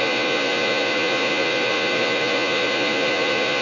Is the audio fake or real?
fake